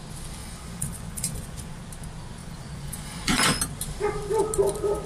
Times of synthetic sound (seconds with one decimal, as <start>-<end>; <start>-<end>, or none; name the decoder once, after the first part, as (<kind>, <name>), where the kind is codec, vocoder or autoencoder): 0.4-1.8 (vocoder, Vocos); 2.4-3.6